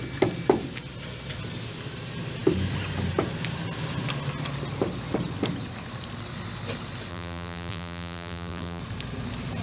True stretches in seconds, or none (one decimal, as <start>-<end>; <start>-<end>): 0.0-7.1; 8.8-9.6